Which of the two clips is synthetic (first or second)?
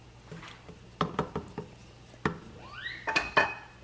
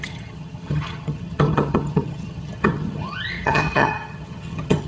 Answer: second